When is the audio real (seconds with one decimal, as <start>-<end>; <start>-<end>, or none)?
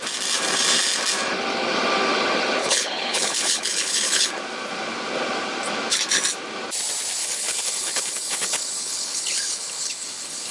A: 0.0-2.6; 4.3-7.2